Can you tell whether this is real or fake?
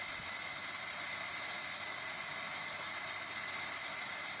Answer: real